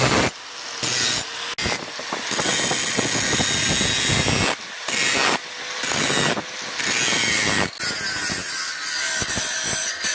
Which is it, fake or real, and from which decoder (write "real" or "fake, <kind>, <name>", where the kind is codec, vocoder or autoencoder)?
real